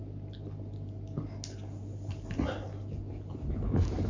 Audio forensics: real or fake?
real